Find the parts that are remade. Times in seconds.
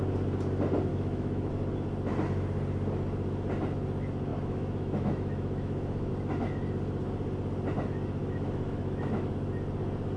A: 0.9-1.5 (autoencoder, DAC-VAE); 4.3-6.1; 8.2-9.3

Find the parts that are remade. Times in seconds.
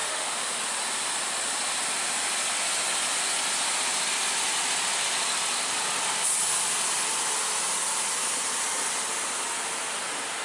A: 0.0-0.6 (autoencoder, DAC-VAE)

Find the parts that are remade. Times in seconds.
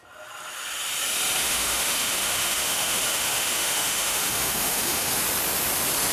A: 1.4-5.1 (autoencoder, DAC-VAE)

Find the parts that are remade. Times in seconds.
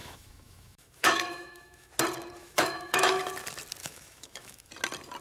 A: 0.0-1.9 (autoencoder, DAC-VAE); 2.4-3.2; 3.8-4.7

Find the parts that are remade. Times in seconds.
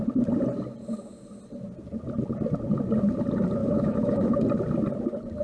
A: 3.6-4.4 (autoencoder, DAC-VAE)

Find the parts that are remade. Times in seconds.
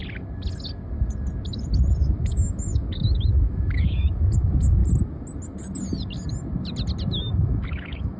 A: 2.0-4.8 (autoencoder, DAC-VAE); 7.2-8.2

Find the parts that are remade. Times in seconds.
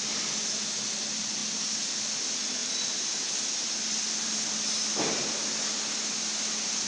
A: none